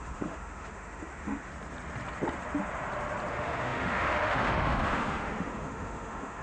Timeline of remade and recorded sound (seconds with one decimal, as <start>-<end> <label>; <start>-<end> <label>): 0.0-1.5 remade; 1.5-3.3 recorded; 3.3-6.4 remade